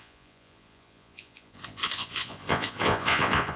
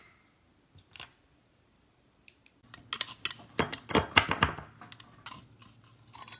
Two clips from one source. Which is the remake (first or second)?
first